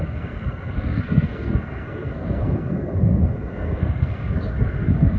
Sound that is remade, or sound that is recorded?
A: remade